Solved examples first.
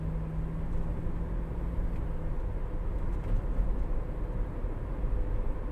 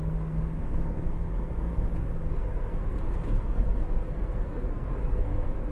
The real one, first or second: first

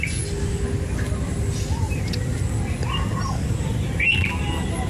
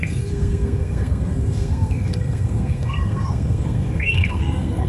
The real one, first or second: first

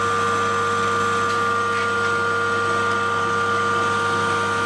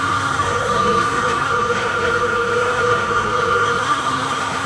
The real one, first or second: first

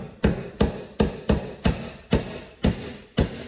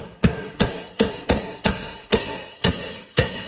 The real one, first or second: first